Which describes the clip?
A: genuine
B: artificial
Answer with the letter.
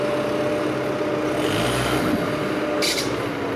A